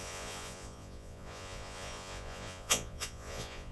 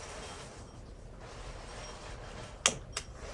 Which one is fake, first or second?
first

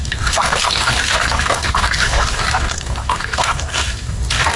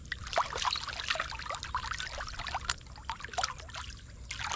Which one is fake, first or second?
first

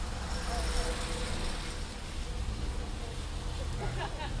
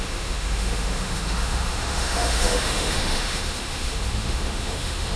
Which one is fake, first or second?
second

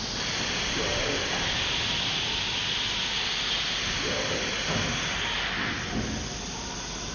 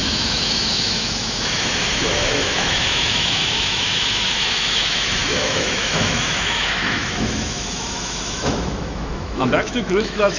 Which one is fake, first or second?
second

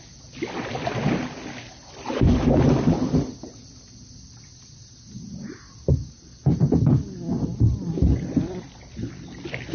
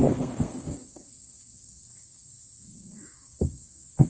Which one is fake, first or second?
second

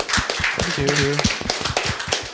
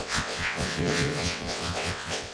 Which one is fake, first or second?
second